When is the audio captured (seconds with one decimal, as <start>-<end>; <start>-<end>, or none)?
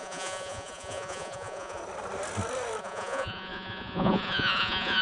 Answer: 1.8-2.8